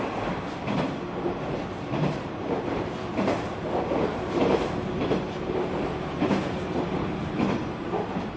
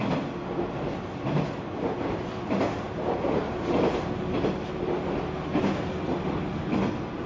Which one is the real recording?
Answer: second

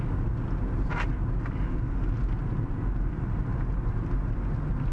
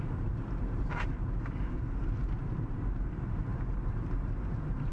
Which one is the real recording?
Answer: first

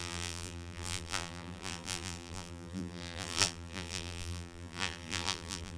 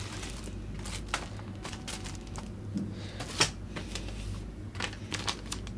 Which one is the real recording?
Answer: second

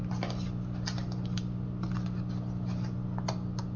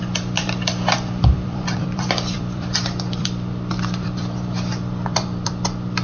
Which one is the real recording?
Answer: first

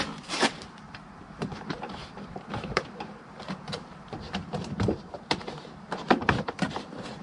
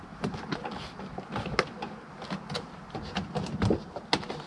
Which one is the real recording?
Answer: second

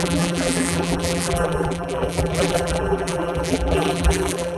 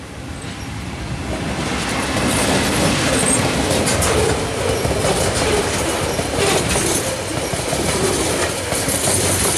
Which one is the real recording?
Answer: second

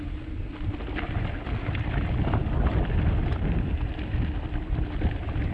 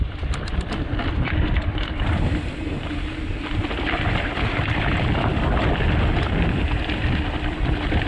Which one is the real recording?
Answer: first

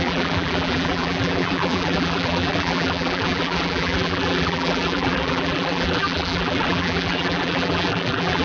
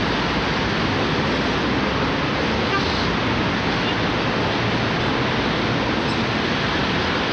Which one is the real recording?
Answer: second